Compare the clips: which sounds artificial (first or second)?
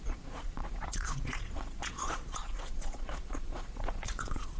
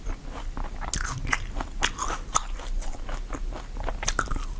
first